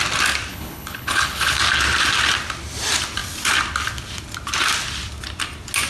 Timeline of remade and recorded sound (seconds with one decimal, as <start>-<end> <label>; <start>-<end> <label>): 0.0-0.5 recorded; 0.5-1.6 remade; 1.6-5.9 recorded